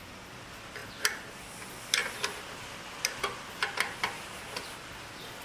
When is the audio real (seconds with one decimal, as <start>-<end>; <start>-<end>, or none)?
0.0-5.4